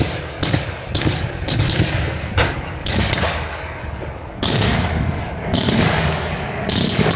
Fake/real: fake